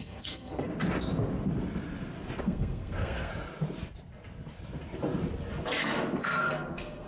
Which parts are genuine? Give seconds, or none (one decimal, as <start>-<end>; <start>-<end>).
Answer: 0.7-2.4; 3.3-6.2

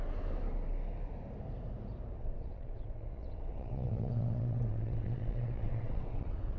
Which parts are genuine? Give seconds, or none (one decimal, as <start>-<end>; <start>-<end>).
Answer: 0.0-2.2

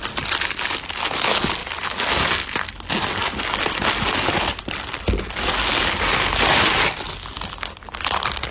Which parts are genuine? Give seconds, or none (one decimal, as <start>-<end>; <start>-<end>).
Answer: 0.0-8.5

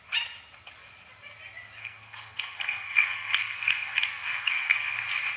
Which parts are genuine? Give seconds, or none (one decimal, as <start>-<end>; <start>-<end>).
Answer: 0.0-1.8; 5.0-5.4